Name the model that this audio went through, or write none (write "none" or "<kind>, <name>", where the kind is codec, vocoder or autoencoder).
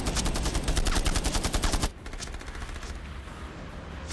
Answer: none